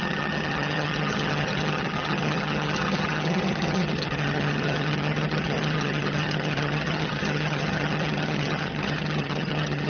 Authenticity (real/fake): fake